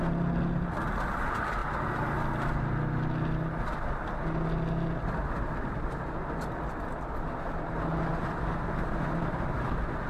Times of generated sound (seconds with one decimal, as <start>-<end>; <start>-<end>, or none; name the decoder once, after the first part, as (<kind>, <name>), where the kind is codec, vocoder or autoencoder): none